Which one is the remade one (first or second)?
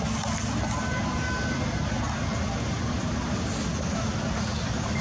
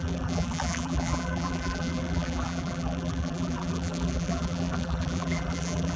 second